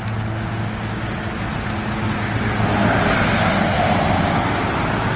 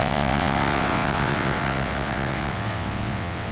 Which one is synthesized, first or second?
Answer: second